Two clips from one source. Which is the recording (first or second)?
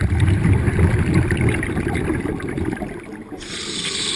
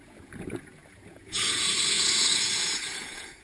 first